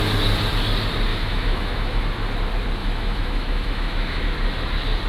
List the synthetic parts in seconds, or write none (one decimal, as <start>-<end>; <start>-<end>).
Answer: 1.1-2.0; 2.8-4.2